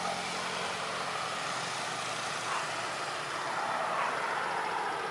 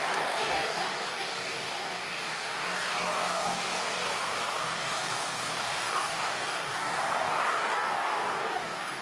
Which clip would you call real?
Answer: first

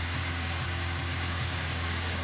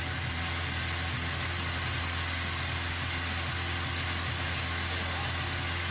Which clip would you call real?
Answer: second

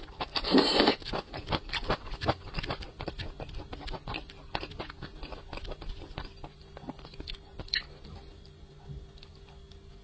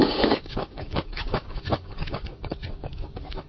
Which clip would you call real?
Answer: first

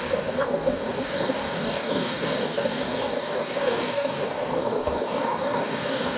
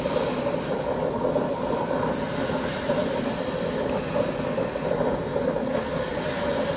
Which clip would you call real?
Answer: second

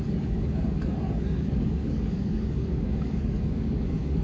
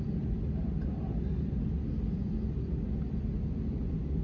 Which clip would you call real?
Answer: second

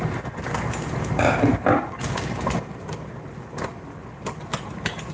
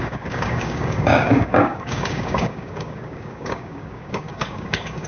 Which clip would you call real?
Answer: first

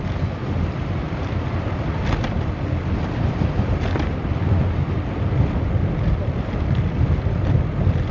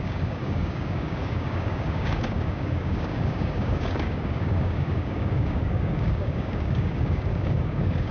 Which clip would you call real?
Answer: first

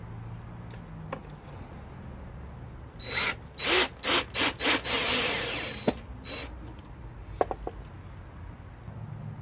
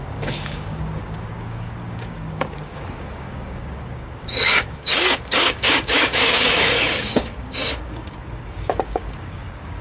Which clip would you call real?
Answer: first